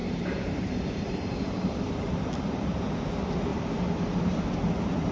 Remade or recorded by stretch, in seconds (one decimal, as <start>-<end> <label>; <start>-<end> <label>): 0.0-1.9 remade; 1.9-3.5 recorded; 3.5-4.2 remade; 4.2-5.1 recorded